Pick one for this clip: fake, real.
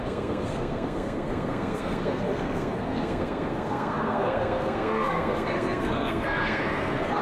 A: fake